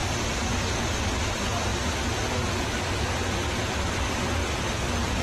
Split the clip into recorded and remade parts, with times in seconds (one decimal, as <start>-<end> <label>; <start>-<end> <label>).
0.0-1.1 recorded; 1.1-1.7 remade; 1.7-3.7 recorded; 3.7-5.2 remade